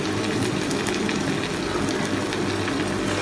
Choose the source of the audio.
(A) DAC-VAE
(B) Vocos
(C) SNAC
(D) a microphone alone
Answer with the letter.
D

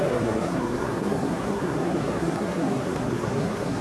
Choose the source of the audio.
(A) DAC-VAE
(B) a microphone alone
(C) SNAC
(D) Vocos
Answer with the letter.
C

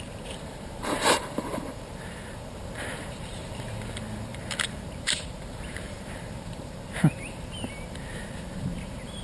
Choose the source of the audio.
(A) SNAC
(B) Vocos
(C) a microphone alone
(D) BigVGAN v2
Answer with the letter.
D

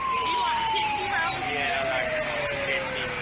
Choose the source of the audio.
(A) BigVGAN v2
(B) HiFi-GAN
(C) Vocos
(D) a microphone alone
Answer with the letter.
D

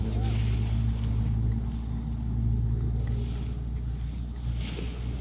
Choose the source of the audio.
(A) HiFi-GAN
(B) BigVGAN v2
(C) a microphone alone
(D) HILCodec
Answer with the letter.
C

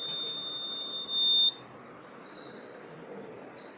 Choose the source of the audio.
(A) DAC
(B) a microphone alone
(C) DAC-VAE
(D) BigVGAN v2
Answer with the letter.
B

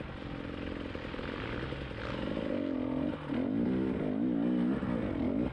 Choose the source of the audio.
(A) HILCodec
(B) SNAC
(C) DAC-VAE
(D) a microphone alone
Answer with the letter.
D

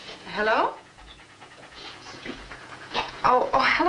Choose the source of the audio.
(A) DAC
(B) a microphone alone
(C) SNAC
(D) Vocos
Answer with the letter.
D